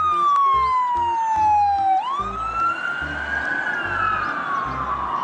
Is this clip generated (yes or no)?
no